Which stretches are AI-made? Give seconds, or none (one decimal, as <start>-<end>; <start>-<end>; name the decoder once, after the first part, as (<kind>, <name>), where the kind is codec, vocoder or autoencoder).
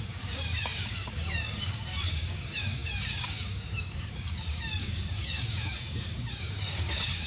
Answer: 0.0-7.3 (codec, DAC)